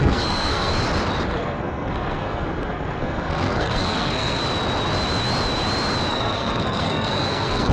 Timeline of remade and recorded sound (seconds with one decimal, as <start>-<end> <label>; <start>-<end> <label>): 0.0-0.7 remade; 0.7-1.3 recorded; 1.3-4.4 remade; 4.4-6.1 recorded; 6.1-7.7 remade

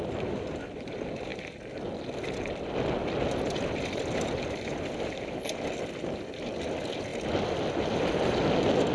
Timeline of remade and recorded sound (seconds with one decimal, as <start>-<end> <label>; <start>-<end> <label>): 0.0-8.9 recorded

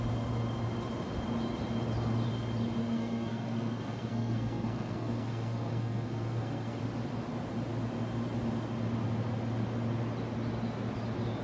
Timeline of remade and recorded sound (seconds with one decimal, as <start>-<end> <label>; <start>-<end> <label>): 0.0-2.8 recorded; 2.8-6.8 remade; 6.8-11.4 recorded

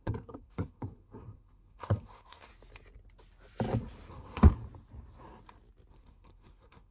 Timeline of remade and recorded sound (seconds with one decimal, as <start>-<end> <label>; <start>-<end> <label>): 0.0-2.5 remade; 2.5-4.1 recorded; 4.1-4.5 remade; 4.5-5.9 recorded; 5.9-6.9 remade

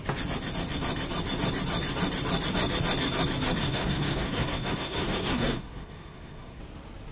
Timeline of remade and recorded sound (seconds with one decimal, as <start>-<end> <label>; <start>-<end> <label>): 0.0-3.6 recorded; 3.6-6.6 remade; 6.6-7.1 recorded